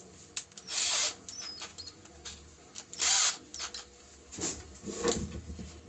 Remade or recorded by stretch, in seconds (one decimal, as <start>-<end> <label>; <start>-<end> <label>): 0.0-1.7 recorded; 1.7-2.7 remade; 2.7-5.9 recorded